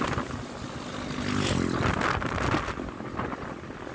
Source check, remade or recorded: recorded